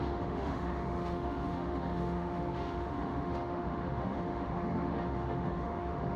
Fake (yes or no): yes